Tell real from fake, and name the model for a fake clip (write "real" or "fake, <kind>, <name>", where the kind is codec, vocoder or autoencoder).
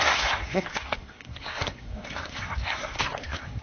fake, codec, SNAC